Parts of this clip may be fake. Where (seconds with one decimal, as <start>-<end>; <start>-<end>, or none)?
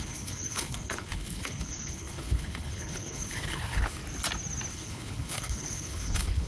0.0-4.0; 4.7-6.5